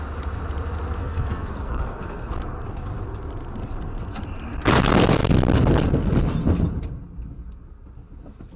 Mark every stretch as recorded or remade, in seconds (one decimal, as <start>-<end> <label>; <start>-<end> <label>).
0.0-1.0 recorded; 1.0-2.3 remade; 2.3-8.6 recorded